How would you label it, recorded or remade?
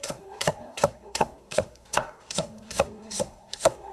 remade